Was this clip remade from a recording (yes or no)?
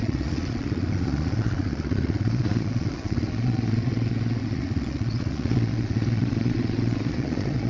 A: yes